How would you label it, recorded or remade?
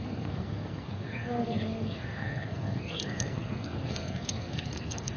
remade